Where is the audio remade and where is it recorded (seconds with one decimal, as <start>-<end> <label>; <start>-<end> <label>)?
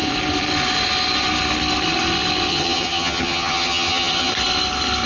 0.0-2.5 recorded; 2.5-4.3 remade; 4.3-5.1 recorded